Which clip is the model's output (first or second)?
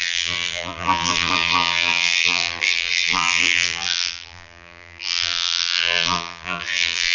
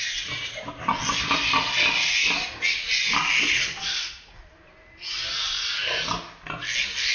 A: first